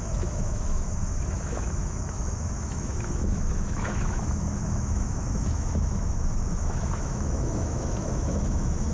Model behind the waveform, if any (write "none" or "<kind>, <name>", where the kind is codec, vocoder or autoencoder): autoencoder, DAC-VAE